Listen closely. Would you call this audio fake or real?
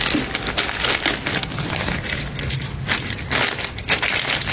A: real